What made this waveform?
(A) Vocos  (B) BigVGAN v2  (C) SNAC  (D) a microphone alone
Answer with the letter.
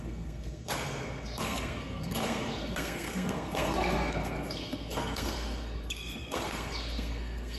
C